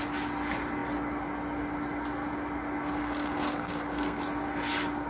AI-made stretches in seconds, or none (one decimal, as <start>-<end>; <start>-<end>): 3.0-4.2